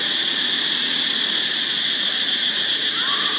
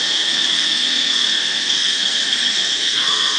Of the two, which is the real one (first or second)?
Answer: first